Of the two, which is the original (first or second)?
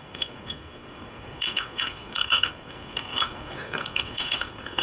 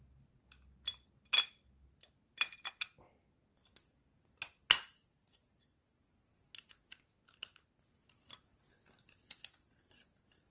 second